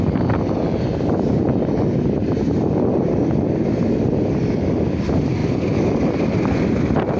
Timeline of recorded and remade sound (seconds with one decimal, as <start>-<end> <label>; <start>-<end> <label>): 0.0-7.2 recorded